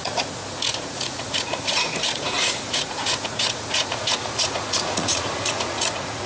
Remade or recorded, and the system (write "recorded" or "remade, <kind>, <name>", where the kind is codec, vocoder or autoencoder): remade, vocoder, Vocos